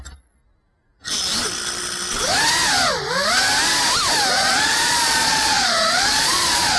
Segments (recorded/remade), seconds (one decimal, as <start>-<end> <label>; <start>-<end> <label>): 0.0-0.4 remade; 0.4-4.3 recorded; 4.3-6.8 remade